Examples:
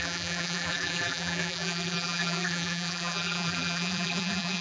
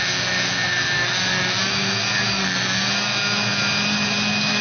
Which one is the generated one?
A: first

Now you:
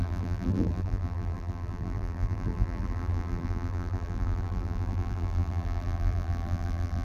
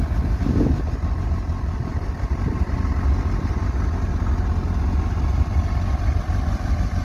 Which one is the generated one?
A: first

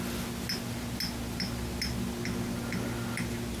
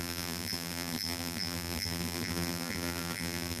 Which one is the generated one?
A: second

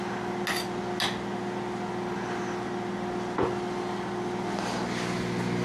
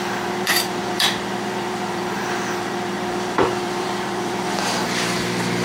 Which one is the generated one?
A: second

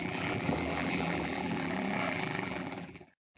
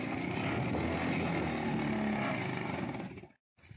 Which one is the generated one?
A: first